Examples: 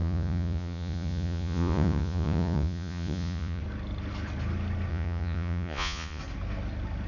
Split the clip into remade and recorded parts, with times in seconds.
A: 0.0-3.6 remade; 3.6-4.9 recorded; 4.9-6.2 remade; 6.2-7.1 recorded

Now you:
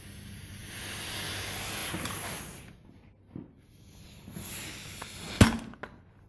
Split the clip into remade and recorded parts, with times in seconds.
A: 0.0-6.3 recorded

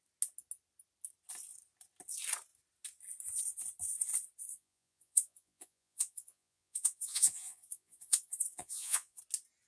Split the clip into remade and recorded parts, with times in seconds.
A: 0.0-4.5 recorded; 4.5-9.2 remade; 9.2-9.7 recorded

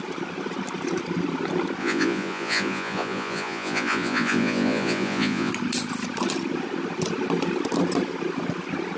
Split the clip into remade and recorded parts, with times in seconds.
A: 0.0-1.8 recorded; 1.8-5.5 remade; 5.5-9.0 recorded

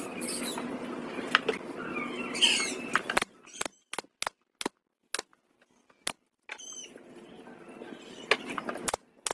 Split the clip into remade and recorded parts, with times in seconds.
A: 0.0-9.3 recorded

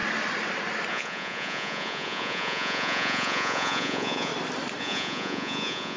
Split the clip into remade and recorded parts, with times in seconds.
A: 0.0-0.9 recorded; 0.9-4.3 remade; 4.3-4.8 recorded; 4.8-6.0 remade

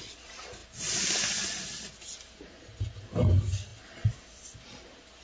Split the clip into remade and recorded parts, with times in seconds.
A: 0.0-5.2 recorded

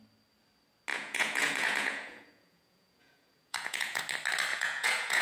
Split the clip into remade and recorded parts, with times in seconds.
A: 0.0-0.9 recorded; 0.9-4.0 remade; 4.0-4.5 recorded; 4.5-5.2 remade